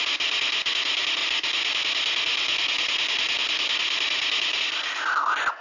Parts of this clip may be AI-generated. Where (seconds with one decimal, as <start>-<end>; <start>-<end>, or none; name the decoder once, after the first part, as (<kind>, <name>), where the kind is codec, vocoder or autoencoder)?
none